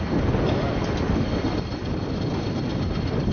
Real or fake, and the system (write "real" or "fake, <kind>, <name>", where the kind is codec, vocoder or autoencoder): real